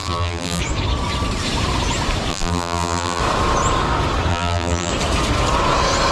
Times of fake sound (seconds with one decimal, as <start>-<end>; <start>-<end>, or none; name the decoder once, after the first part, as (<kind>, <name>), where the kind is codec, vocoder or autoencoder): 0.0-0.6 (vocoder, BigVGAN v2); 2.3-3.2; 4.3-4.9